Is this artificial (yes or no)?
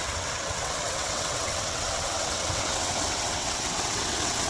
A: yes